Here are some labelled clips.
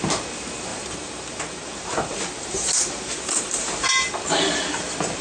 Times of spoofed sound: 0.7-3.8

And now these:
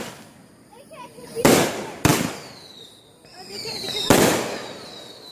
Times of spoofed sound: none

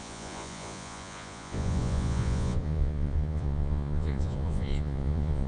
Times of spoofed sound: 0.0-5.5